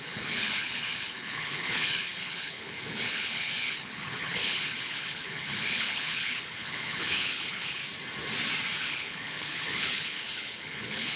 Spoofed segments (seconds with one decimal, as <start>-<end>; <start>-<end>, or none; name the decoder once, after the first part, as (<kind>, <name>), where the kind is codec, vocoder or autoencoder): 0.0-7.8 (codec, HILCodec); 8.8-11.2